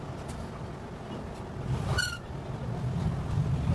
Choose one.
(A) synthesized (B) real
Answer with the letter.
B